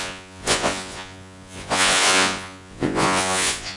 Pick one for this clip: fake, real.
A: fake